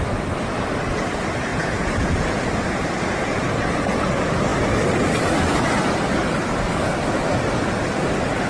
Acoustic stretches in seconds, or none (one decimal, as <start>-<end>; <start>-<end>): 0.0-1.5; 3.4-8.5